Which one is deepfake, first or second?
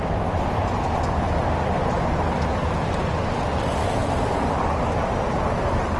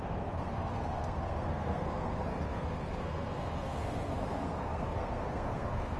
second